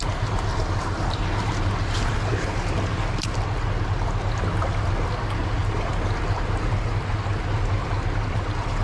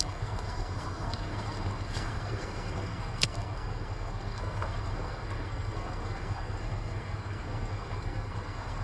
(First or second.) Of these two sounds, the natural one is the first